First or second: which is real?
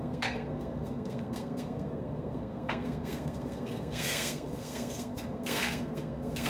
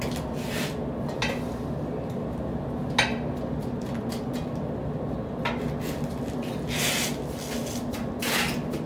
second